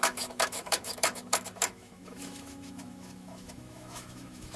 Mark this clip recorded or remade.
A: remade